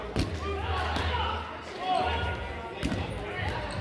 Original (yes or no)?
yes